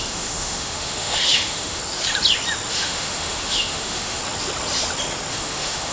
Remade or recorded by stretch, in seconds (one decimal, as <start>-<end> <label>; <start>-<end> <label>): 0.0-1.8 remade; 1.8-2.7 recorded; 2.7-4.2 remade; 4.2-5.3 recorded; 5.3-5.9 remade